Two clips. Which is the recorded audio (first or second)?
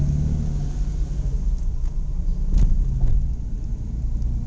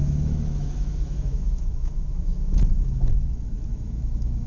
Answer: first